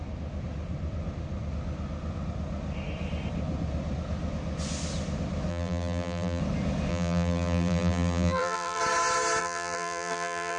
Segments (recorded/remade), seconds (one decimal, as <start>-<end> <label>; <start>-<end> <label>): 0.0-5.5 recorded; 5.5-6.4 remade; 6.4-6.9 recorded; 6.9-8.8 remade; 8.8-9.4 recorded; 9.4-10.6 remade